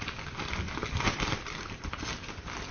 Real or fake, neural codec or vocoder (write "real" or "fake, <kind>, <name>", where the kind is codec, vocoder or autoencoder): real